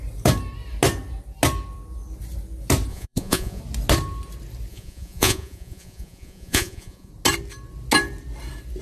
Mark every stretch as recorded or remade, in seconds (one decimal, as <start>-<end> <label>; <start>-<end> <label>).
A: 0.0-2.9 recorded; 2.9-3.6 remade; 3.6-4.7 recorded; 4.7-7.1 remade; 7.1-8.8 recorded